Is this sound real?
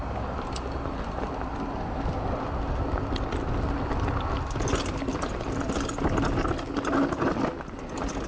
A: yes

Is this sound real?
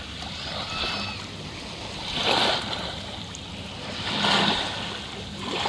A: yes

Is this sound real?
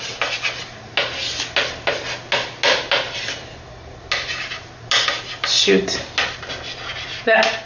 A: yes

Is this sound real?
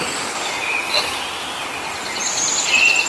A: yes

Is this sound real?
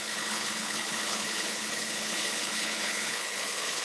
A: no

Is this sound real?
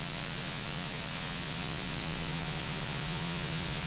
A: no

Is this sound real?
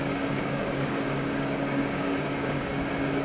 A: no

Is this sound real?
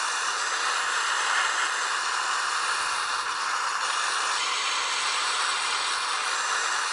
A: yes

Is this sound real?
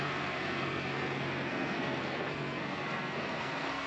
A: no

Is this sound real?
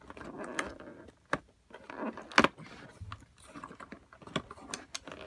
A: yes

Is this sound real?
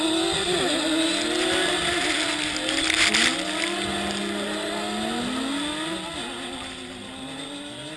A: yes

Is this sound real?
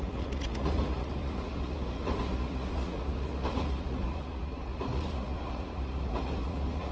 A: no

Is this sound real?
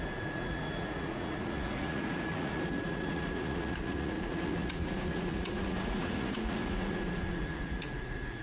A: no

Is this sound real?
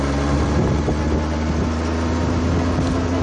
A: yes